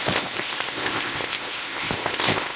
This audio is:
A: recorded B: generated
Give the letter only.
B